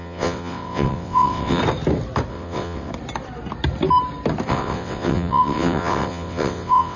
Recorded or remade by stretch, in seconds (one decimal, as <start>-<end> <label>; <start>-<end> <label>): 0.0-1.6 remade; 1.6-2.3 recorded; 2.3-2.9 remade; 2.9-4.5 recorded; 4.5-7.0 remade